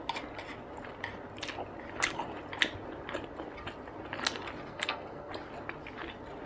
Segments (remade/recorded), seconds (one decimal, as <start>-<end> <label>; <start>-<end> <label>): 0.0-4.7 recorded; 4.7-5.3 remade; 5.3-6.5 recorded